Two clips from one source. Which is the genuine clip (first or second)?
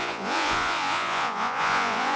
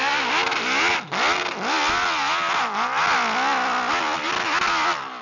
second